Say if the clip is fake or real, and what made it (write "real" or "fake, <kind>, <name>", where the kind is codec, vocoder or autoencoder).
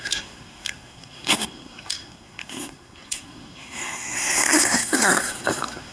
fake, codec, SNAC